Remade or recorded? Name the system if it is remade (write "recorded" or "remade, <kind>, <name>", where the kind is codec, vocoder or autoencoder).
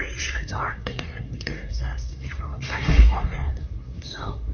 remade, codec, SNAC